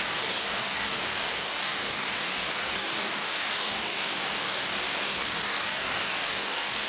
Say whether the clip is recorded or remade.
remade